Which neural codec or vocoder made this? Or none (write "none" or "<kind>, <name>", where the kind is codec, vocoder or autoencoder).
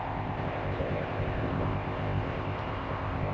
codec, ZipCodec